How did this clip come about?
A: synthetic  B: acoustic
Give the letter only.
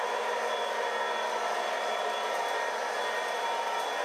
B